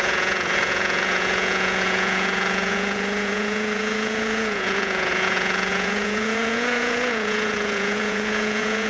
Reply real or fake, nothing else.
fake